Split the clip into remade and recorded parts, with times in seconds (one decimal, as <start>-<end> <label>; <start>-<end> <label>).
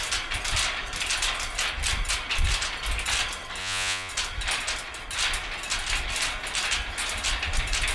0.0-3.6 recorded; 3.6-4.1 remade; 4.1-7.9 recorded